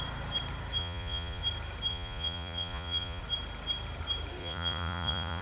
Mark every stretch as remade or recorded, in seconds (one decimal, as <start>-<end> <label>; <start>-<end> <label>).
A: 0.0-0.8 recorded; 0.8-1.4 remade; 1.4-1.9 recorded; 1.9-3.2 remade; 3.2-4.4 recorded; 4.4-5.4 remade

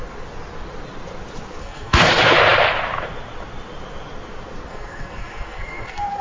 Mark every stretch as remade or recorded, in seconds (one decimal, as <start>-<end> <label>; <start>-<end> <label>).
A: 0.0-1.6 recorded; 1.6-2.1 remade; 2.1-4.7 recorded; 4.7-6.2 remade

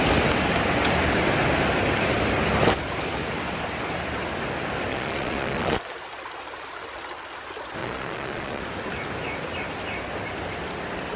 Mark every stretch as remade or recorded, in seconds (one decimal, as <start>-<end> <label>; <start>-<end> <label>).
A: 0.0-4.9 recorded; 4.9-5.8 remade; 5.8-7.8 recorded; 7.8-8.6 remade; 8.6-11.2 recorded

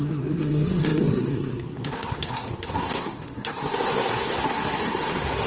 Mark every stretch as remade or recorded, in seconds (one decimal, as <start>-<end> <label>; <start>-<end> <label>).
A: 0.0-5.5 remade